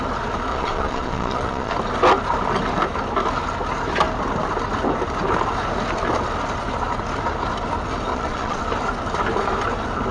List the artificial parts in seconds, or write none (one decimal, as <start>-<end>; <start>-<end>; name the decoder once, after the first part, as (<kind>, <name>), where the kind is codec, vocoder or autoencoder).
0.5-1.7 (vocoder, Vocos); 8.1-8.6